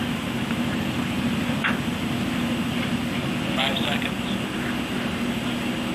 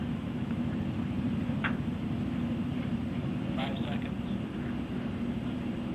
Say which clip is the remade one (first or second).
second